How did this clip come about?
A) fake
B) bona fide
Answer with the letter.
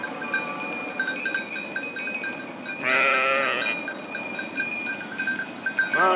B